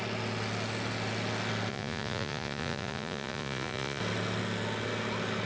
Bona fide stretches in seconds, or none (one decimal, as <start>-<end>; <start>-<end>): 0.0-1.7; 4.0-5.5